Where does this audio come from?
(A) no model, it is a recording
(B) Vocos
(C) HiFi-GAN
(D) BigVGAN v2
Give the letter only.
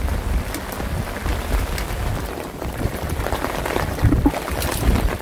D